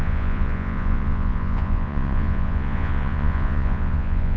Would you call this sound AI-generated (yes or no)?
yes